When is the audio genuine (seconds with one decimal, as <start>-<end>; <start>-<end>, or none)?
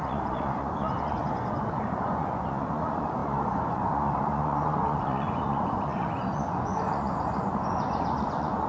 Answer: none